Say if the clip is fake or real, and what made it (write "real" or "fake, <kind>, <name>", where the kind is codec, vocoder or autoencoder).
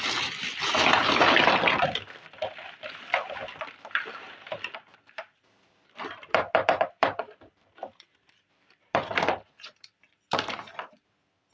fake, vocoder, BigVGAN v2